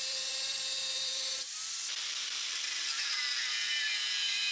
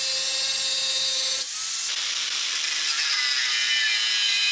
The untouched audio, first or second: second